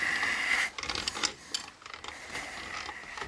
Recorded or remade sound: recorded